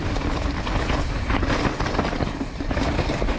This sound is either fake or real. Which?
real